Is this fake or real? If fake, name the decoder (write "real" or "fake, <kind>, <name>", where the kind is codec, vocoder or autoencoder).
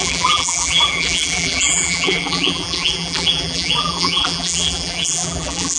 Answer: fake, vocoder, BigVGAN v2